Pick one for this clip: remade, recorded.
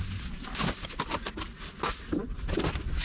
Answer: recorded